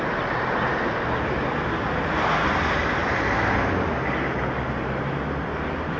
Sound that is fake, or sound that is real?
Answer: real